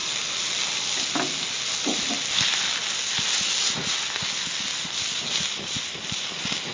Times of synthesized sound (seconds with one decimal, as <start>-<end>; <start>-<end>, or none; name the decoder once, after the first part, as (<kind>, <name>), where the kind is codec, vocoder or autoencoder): none